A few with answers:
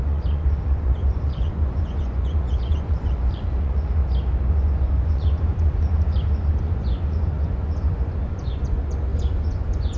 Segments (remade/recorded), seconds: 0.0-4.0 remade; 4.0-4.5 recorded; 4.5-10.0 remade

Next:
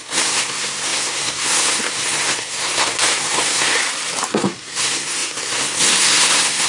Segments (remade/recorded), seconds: 0.0-3.8 remade; 3.8-4.3 recorded; 4.3-6.7 remade

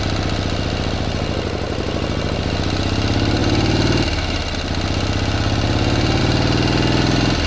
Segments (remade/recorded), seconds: 0.0-7.5 recorded

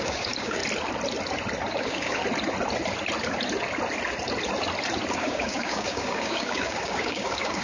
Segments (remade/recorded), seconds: 0.0-0.6 remade; 0.6-1.8 recorded; 1.8-2.2 remade; 2.2-5.1 recorded; 5.1-7.6 remade

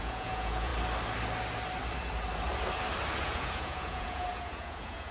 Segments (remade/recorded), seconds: 0.0-0.7 remade; 0.7-3.2 recorded; 3.2-5.1 remade